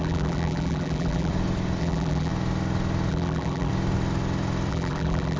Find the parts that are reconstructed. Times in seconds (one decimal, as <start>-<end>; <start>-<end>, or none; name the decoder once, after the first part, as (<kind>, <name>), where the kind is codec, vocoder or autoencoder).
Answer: 0.0-1.3 (vocoder, BigVGAN v2); 1.8-2.3; 3.1-3.7; 4.7-5.4